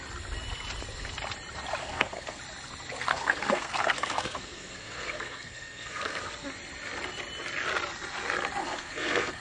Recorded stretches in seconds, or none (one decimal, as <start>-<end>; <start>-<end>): 0.0-1.8; 2.4-3.1; 6.2-8.6